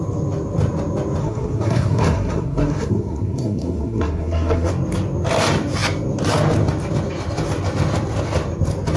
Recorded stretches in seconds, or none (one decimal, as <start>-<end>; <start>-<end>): 0.0-1.2; 4.7-9.0